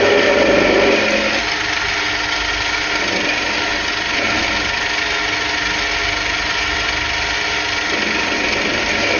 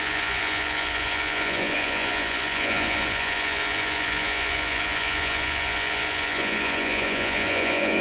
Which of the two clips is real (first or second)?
first